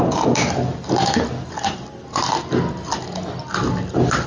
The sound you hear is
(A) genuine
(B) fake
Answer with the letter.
A